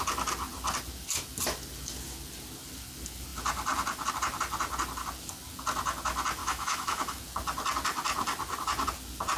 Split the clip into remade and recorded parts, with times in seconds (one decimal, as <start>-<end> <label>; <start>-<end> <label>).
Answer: 0.0-6.4 recorded; 6.4-7.2 remade; 7.2-9.4 recorded